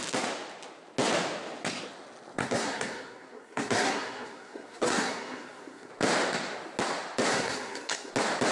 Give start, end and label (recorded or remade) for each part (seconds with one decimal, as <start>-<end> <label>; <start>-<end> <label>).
0.0-2.4 recorded; 2.4-5.9 remade; 5.9-7.3 recorded; 7.3-8.1 remade; 8.1-8.5 recorded